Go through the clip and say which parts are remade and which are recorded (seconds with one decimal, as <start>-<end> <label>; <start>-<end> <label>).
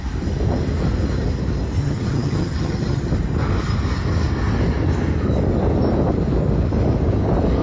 0.0-1.8 recorded; 1.8-3.1 remade; 3.1-7.6 recorded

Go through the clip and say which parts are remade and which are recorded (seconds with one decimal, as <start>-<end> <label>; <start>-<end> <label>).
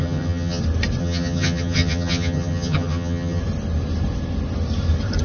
0.0-0.6 remade; 0.6-1.0 recorded; 1.0-3.4 remade; 3.4-5.2 recorded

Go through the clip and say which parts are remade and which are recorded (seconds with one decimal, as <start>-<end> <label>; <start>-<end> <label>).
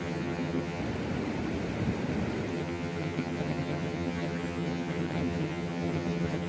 0.0-0.8 remade; 0.8-2.5 recorded; 2.5-6.5 remade